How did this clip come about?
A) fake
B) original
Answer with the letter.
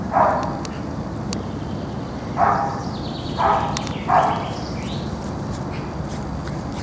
B